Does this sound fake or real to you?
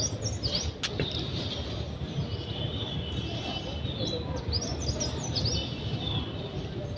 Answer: real